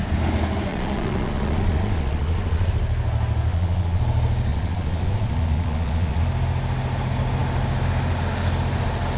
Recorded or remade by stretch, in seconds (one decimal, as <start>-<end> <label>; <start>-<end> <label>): 0.0-0.7 recorded; 0.7-2.7 remade; 2.7-3.5 recorded; 3.5-4.0 remade; 4.0-4.5 recorded; 4.5-6.2 remade; 6.2-9.2 recorded